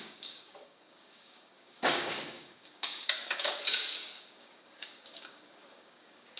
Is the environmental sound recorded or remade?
remade